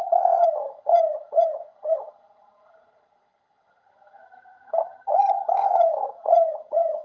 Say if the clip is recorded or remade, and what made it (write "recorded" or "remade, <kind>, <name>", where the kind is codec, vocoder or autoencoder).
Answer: remade, vocoder, HiFi-GAN